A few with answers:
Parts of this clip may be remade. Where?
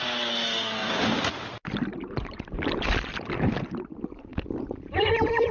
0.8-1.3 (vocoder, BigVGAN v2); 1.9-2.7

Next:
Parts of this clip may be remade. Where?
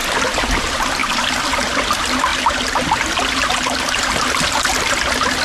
none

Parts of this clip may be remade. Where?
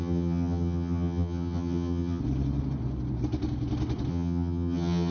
0.0-2.2 (vocoder, HiFi-GAN); 4.1-5.1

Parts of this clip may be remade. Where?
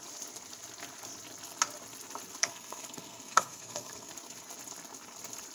2.4-4.1 (codec, SNAC)